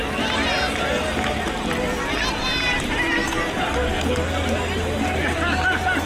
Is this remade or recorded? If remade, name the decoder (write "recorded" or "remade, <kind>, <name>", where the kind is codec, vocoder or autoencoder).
recorded